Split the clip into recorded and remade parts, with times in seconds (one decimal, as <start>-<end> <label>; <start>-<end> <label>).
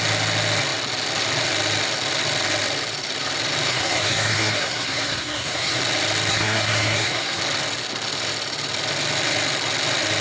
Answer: 0.0-3.7 recorded; 3.7-5.8 remade; 5.8-6.3 recorded; 6.3-7.4 remade; 7.4-10.2 recorded